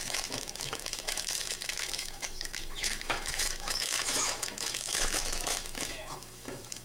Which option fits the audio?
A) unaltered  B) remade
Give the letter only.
B